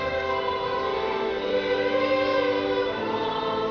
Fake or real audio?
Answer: real